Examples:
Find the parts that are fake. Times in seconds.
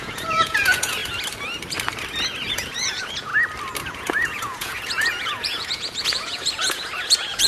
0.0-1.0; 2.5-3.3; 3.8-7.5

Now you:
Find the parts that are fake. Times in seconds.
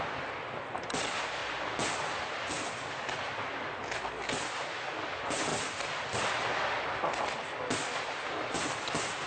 none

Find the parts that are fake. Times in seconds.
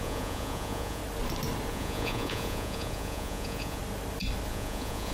0.0-1.0; 1.7-3.8; 4.5-5.1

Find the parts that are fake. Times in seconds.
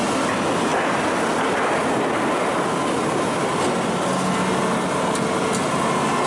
none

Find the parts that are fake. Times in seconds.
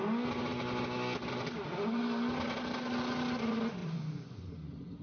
3.8-4.4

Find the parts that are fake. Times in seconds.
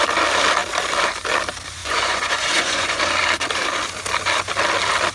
1.8-3.0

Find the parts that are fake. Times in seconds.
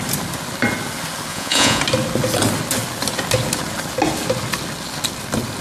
1.3-1.8